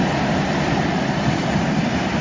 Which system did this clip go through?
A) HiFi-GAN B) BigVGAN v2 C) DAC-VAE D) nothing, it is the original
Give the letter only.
D